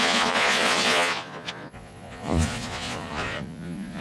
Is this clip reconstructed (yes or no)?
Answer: yes